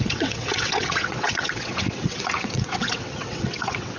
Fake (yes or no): yes